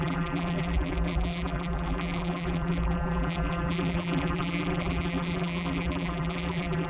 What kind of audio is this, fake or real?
fake